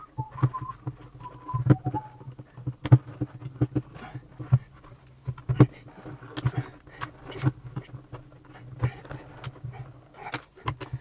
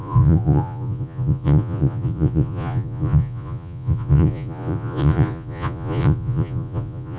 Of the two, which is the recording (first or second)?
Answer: first